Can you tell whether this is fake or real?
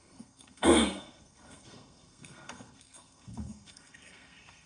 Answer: fake